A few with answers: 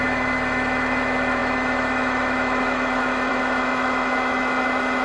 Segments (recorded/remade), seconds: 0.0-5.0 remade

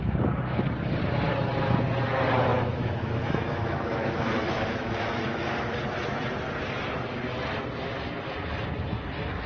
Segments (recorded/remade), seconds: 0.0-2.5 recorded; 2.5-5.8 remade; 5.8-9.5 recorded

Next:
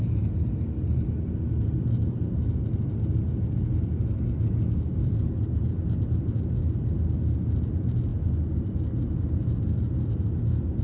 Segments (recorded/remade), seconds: 0.0-10.8 recorded

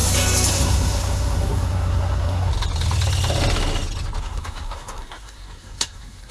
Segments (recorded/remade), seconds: 0.0-0.5 recorded; 0.5-2.5 remade; 2.5-4.2 recorded; 4.2-6.3 remade